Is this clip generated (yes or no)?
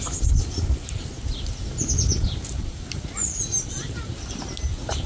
no